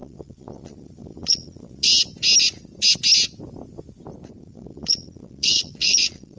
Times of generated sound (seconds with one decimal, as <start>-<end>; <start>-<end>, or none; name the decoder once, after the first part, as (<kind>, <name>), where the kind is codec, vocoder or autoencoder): 0.0-1.9 (vocoder, Vocos); 4.4-6.4